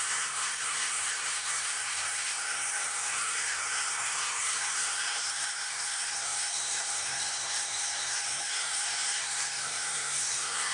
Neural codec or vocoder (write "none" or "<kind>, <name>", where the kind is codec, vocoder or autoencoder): codec, SNAC